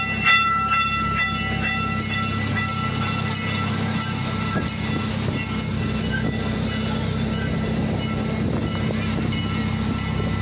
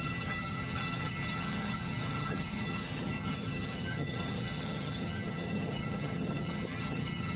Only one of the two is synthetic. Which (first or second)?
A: second